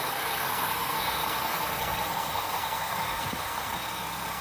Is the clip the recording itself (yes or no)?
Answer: no